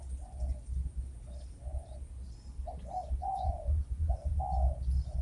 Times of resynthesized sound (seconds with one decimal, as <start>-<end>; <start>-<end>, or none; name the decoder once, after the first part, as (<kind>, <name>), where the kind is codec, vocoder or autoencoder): 3.2-4.4 (vocoder, Vocos)